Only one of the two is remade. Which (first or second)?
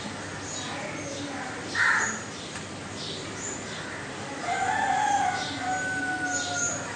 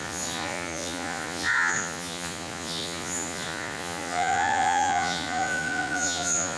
second